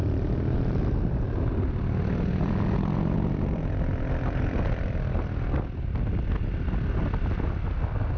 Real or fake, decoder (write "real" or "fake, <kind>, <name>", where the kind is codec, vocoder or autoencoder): real